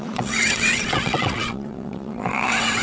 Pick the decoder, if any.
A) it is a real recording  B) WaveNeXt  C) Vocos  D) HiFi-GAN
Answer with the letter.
B